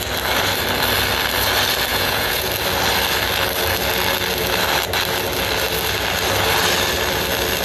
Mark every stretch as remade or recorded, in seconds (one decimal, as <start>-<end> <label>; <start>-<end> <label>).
0.0-1.9 recorded; 1.9-2.5 remade; 2.5-7.6 recorded